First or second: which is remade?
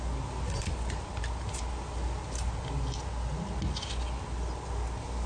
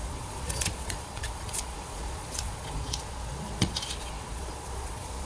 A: second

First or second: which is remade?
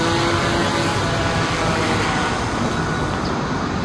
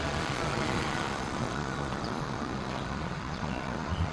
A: second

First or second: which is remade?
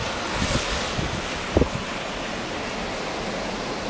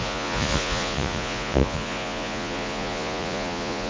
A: second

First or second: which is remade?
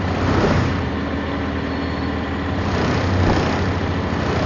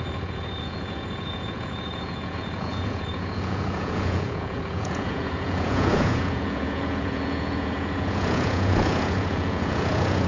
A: second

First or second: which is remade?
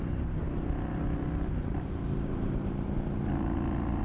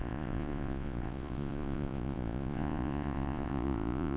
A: second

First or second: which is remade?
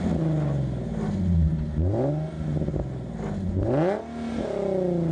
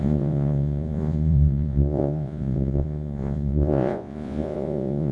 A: second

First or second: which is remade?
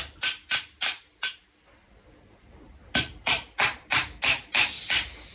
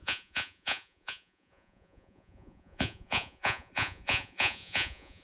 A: second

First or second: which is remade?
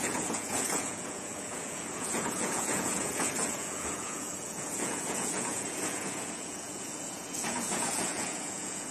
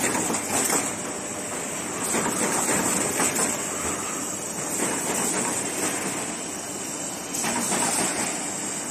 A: first